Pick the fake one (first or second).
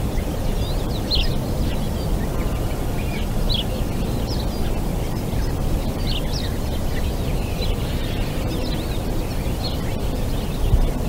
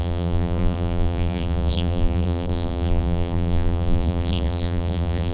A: second